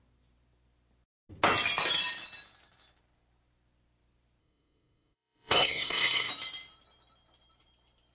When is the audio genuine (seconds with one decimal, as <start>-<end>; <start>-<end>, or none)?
0.0-4.4; 6.3-8.1